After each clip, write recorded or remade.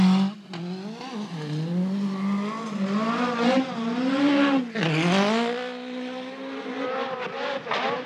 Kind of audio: recorded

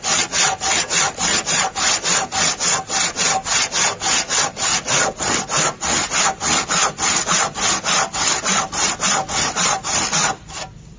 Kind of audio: recorded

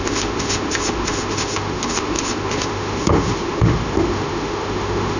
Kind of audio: remade